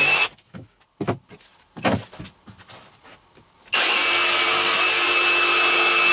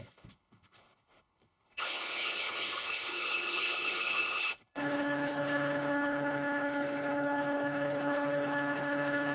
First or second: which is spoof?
second